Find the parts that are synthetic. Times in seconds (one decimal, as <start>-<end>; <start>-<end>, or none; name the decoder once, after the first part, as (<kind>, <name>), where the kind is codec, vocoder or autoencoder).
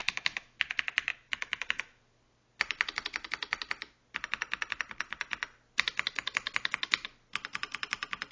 0.0-0.6 (autoencoder, DAC-VAE); 1.1-2.0